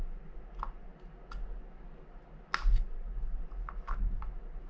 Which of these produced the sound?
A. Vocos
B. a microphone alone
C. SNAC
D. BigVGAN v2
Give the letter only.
B